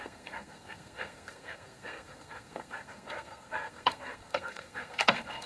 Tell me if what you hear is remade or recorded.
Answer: remade